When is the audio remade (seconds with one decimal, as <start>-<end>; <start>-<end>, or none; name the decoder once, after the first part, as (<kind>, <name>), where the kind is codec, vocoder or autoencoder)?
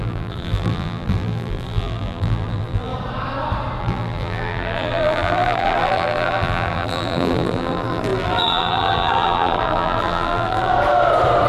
0.0-2.9 (vocoder, BigVGAN v2); 3.8-10.7